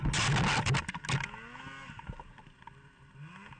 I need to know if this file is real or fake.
real